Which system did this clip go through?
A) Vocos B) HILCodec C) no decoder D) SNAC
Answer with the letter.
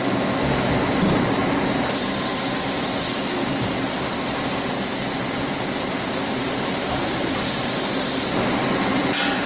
C